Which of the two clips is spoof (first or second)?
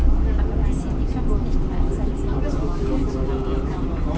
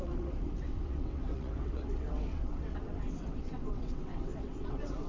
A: second